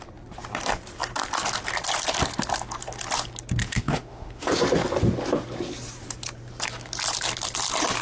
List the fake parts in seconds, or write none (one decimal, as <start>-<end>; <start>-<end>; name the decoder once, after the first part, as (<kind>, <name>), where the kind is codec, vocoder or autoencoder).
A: 3.6-4.5 (autoencoder, DAC-VAE)